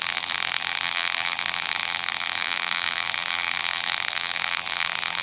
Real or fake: fake